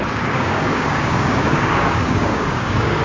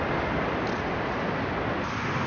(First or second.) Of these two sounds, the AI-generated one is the first